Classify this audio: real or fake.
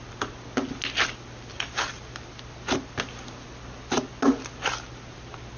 real